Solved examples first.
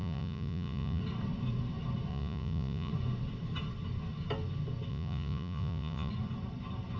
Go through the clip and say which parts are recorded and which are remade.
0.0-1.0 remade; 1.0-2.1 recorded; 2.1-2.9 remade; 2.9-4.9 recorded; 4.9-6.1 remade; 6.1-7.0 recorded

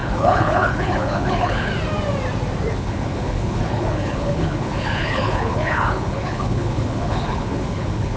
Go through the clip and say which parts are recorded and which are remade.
0.0-1.7 remade; 1.7-2.7 recorded; 2.7-8.2 remade

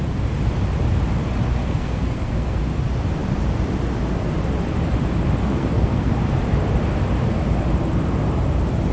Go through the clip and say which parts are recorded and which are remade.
0.0-1.6 recorded; 1.6-2.6 remade; 2.6-5.4 recorded; 5.4-6.1 remade; 6.1-8.9 recorded

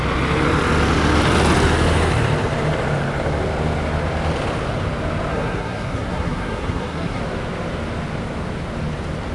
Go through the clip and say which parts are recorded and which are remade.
0.0-5.3 recorded; 5.3-7.2 remade; 7.2-9.3 recorded

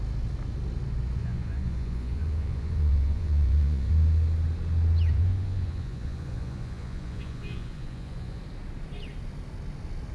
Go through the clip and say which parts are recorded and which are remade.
0.0-1.2 recorded; 1.2-3.9 remade; 3.9-5.1 recorded; 5.1-8.4 remade; 8.4-10.1 recorded

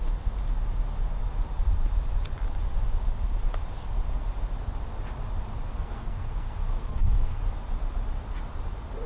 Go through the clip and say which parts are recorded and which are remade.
0.0-5.7 recorded; 5.7-7.4 remade; 7.4-9.1 recorded

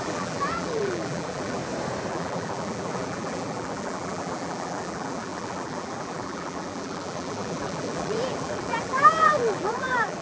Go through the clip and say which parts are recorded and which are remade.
0.0-1.6 remade; 1.6-2.1 recorded; 2.1-10.2 remade

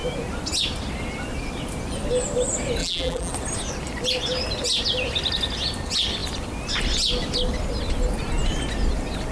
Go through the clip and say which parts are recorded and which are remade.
0.0-2.8 recorded; 2.8-3.3 remade; 3.3-9.3 recorded